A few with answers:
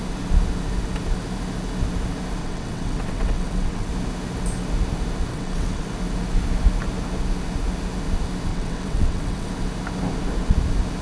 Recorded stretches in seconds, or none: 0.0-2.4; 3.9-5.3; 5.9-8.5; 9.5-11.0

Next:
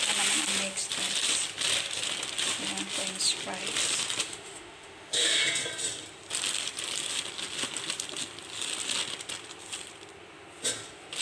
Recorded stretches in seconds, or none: 0.0-4.2; 5.4-11.2

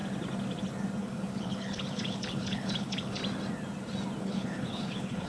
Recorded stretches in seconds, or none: 0.0-1.0; 3.2-4.2

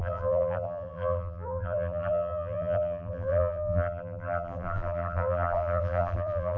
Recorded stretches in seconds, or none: none

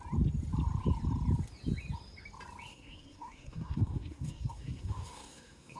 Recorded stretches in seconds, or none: 0.0-2.7